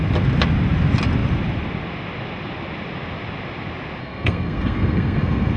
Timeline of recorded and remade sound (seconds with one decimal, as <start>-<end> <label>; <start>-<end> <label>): 0.0-4.0 recorded; 4.0-5.6 remade